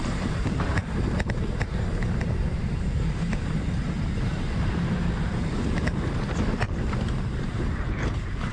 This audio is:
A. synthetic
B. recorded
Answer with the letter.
A